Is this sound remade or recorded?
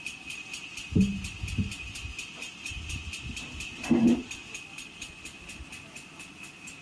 recorded